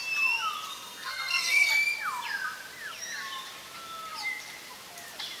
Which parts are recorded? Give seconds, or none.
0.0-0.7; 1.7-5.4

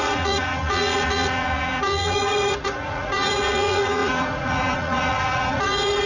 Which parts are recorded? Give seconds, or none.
none